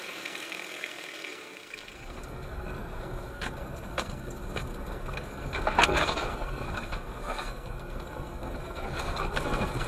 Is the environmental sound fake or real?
fake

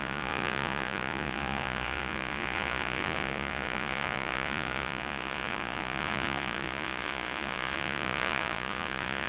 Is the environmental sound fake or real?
fake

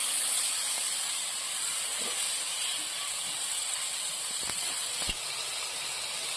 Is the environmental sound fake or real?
real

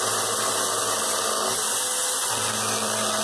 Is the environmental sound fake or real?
real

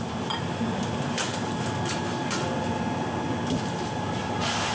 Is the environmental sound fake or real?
real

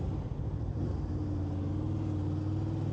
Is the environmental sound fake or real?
real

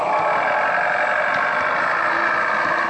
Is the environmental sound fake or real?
real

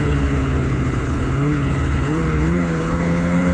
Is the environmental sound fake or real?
fake